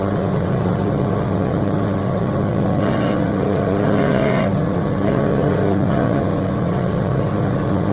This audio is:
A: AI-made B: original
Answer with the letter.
A